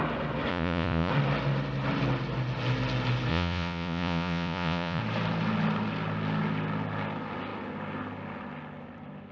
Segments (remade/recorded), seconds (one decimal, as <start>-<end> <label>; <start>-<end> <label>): 0.0-0.5 recorded; 0.5-1.1 remade; 1.1-3.3 recorded; 3.3-5.0 remade; 5.0-9.3 recorded